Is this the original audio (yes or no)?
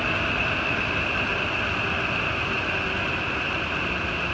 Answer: yes